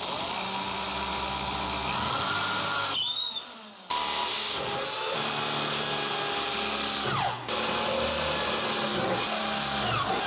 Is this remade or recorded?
recorded